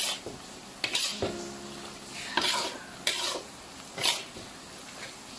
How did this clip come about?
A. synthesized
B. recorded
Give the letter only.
B